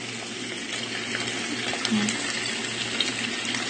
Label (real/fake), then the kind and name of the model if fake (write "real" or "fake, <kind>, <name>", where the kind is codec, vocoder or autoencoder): real